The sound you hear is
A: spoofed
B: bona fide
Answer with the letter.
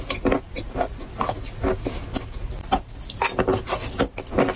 B